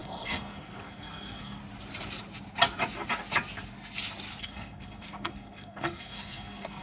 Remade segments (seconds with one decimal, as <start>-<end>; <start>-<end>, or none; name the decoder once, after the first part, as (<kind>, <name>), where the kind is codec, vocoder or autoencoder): 0.0-1.6 (codec, SNAC); 4.4-6.8